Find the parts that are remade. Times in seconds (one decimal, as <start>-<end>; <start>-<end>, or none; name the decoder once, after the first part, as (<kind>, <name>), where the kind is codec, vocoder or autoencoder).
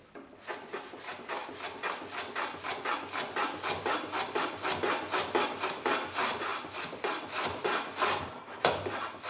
none